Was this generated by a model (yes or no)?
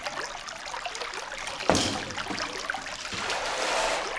no